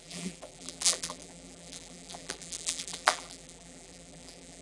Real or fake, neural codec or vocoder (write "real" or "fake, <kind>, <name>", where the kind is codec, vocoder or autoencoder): fake, vocoder, BigVGAN v2